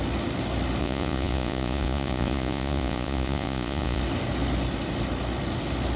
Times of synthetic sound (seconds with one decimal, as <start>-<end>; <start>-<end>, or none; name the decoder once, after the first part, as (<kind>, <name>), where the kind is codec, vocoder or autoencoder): 0.8-4.0 (vocoder, Vocos)